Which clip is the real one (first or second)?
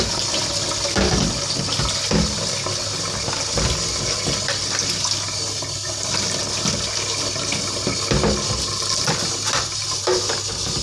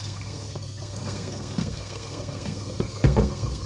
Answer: first